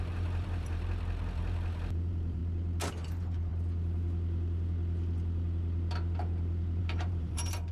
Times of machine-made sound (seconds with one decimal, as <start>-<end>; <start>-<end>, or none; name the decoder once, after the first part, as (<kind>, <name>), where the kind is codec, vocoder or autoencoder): 0.0-2.4 (vocoder, BigVGAN v2); 2.9-3.5; 6.8-7.7